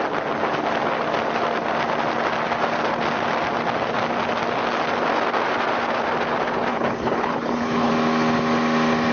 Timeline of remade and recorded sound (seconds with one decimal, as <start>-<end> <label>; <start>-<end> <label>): 0.0-6.7 recorded; 6.7-7.9 remade; 7.9-9.1 recorded

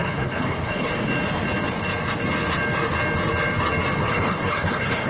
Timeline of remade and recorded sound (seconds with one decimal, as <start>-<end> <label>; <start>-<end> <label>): 0.0-0.9 remade; 0.9-4.0 recorded; 4.0-5.1 remade

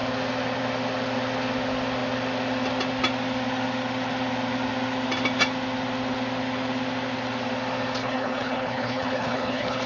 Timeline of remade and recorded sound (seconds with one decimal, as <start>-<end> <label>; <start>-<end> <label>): 0.0-8.0 recorded; 8.0-9.9 remade

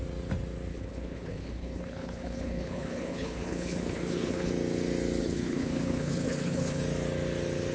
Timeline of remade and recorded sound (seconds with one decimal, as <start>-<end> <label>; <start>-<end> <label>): 0.0-0.7 recorded; 0.7-4.5 remade; 4.5-5.2 recorded; 5.2-6.8 remade; 6.8-7.7 recorded

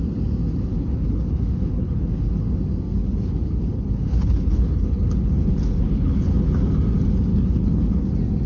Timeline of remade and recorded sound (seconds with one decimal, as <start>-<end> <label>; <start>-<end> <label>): 0.0-0.7 recorded; 0.7-2.3 remade; 2.3-3.0 recorded; 3.0-6.7 remade; 6.7-7.3 recorded; 7.3-8.1 remade; 8.1-8.5 recorded

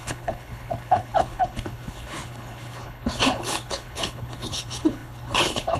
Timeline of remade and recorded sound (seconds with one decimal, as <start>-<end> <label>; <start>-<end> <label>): 0.0-5.8 remade

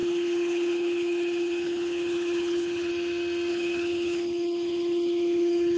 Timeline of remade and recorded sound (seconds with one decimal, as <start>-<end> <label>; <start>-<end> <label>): 0.0-2.9 remade; 2.9-3.5 recorded; 3.5-5.8 remade

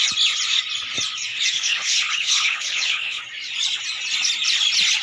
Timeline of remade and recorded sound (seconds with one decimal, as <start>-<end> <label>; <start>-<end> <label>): 0.0-1.3 recorded; 1.3-3.2 remade; 3.2-5.0 recorded